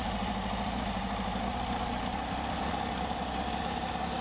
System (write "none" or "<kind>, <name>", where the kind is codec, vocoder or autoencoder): none